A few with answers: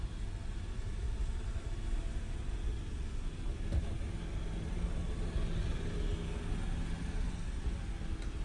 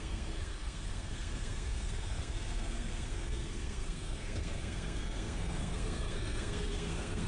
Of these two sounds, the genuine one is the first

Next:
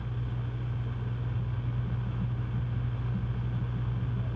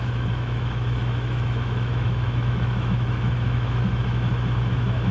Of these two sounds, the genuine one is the first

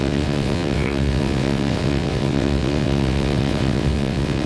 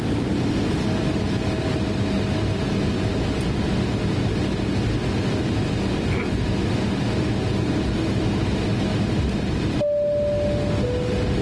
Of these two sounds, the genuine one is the second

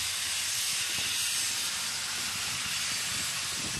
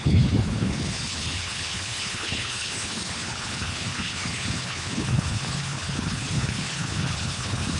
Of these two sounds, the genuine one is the first